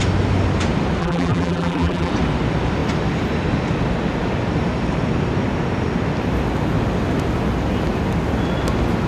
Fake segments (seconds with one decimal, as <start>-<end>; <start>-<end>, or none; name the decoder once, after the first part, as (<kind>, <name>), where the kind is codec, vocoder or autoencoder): 1.0-2.1 (vocoder, BigVGAN v2)